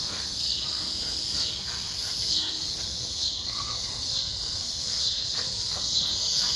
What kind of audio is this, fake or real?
fake